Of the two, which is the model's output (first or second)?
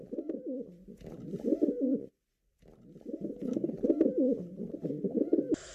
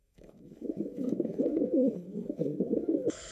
second